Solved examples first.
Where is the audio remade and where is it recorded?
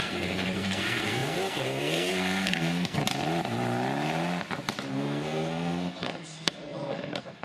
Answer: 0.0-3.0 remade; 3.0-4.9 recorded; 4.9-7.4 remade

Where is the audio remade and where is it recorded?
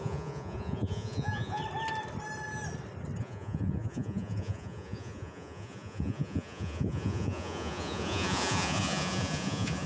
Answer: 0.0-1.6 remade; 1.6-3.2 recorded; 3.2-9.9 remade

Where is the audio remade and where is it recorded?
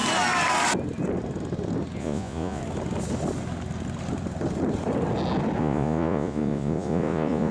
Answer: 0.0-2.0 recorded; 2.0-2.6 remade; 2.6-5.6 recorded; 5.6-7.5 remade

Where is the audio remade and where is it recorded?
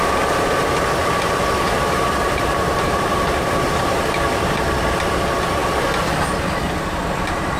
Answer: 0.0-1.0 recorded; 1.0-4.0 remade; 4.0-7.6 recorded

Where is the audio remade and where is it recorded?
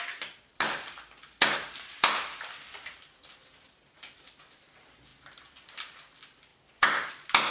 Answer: 0.0-7.5 recorded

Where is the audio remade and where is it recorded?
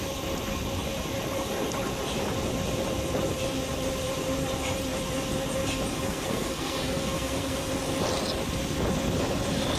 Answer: 0.0-5.9 recorded; 5.9-7.7 remade; 7.7-9.8 recorded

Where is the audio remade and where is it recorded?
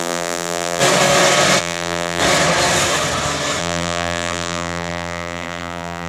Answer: 0.0-0.8 remade; 0.8-1.6 recorded; 1.6-2.2 remade; 2.2-3.6 recorded; 3.6-6.1 remade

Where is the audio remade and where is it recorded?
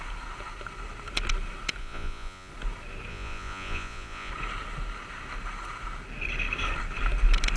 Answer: 0.0-1.8 recorded; 1.8-2.5 remade; 2.5-3.1 recorded; 3.1-4.3 remade; 4.3-7.6 recorded